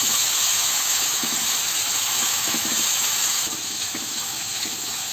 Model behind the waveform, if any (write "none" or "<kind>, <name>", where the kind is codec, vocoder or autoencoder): autoencoder, DAC-VAE